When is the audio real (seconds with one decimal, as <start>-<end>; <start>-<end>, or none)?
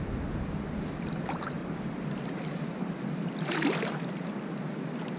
0.0-1.6; 3.3-5.2